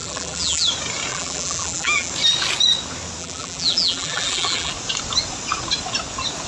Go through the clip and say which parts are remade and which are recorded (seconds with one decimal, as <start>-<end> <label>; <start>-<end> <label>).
0.0-0.7 remade; 0.7-1.1 recorded; 1.1-2.1 remade; 2.1-3.2 recorded; 3.2-4.7 remade; 4.7-6.5 recorded